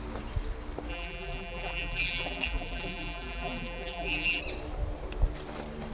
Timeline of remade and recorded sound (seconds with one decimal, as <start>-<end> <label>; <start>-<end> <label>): 0.0-0.9 recorded; 0.9-4.4 remade; 4.4-5.9 recorded